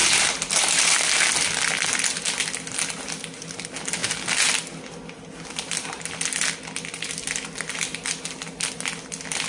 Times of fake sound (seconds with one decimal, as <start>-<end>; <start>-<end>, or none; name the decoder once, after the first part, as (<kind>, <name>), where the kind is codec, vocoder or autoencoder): none